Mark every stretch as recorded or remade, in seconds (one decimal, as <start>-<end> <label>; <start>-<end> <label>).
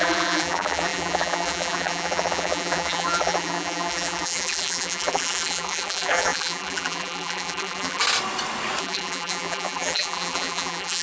0.0-8.0 remade; 8.0-8.8 recorded; 8.8-11.0 remade